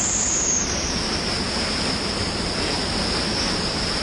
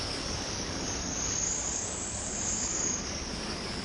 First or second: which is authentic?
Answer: first